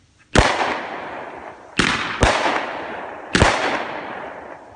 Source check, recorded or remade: recorded